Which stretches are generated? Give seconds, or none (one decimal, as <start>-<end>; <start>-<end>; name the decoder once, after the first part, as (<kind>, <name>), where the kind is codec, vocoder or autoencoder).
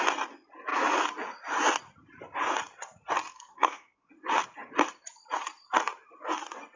3.3-4.1 (codec, SNAC)